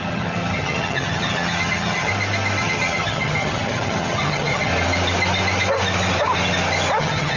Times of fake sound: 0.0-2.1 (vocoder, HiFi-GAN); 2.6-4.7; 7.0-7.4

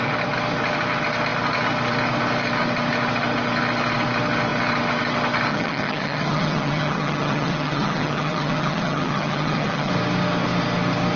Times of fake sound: 5.5-9.9 (vocoder, HiFi-GAN)

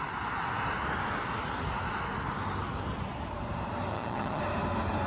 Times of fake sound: 3.9-4.4 (vocoder, HiFi-GAN)